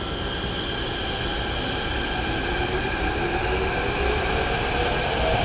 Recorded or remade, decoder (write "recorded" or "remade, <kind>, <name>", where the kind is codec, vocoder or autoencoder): recorded